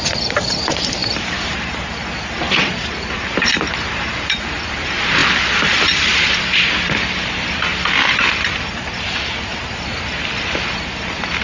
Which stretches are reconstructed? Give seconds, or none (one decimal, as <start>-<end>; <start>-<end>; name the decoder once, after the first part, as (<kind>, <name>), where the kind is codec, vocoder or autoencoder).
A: 0.0-5.2 (vocoder, BigVGAN v2); 6.2-11.4